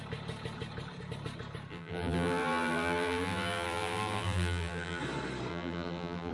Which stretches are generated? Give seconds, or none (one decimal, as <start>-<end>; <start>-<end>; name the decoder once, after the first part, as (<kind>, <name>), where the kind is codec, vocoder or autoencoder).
1.7-5.0 (vocoder, BigVGAN v2); 5.5-6.3